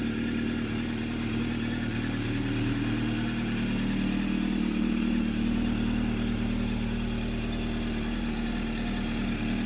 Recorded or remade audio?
recorded